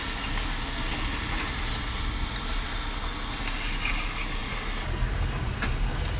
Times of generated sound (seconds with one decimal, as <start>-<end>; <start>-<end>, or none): none